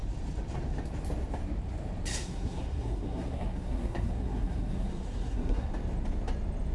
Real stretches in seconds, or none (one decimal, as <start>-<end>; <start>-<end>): 0.0-2.1; 5.7-6.7